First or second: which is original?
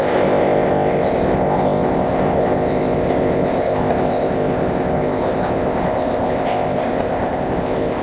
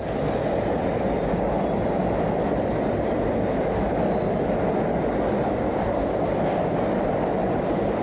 second